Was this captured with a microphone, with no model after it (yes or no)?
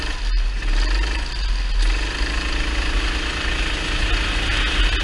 yes